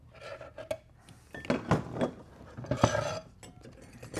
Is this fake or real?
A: real